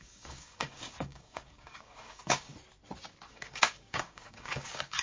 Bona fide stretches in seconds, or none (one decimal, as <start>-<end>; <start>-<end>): 2.5-3.3